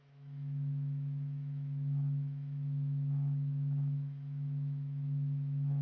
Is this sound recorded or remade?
remade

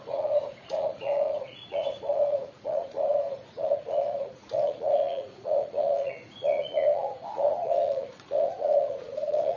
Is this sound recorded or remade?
remade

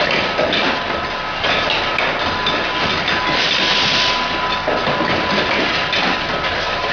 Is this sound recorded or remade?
recorded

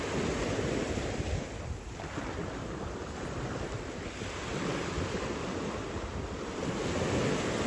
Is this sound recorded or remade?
recorded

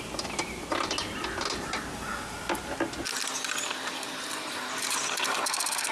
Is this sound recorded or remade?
recorded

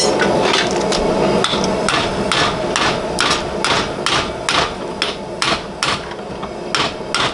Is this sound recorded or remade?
recorded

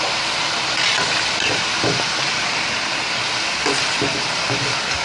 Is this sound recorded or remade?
recorded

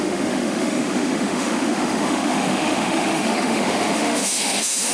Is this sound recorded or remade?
remade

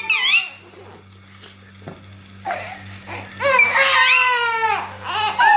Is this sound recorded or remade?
recorded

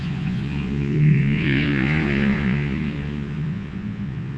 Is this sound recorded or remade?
remade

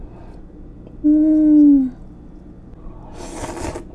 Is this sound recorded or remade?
recorded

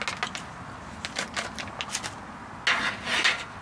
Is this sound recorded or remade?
recorded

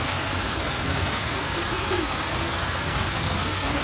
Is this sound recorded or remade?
remade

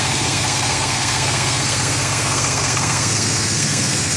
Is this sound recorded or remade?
remade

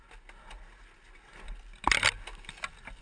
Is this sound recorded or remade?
recorded